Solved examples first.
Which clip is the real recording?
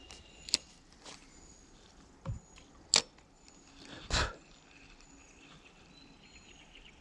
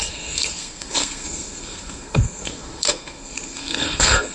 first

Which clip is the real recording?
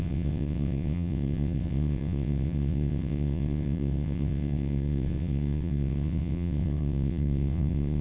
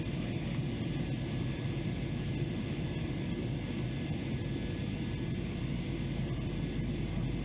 second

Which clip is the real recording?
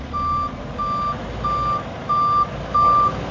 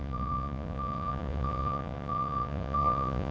first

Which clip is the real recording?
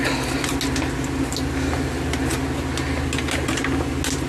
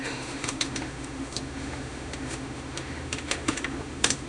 first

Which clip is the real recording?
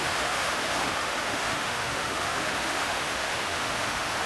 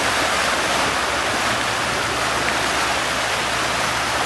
second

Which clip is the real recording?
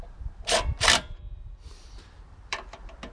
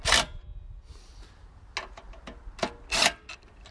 second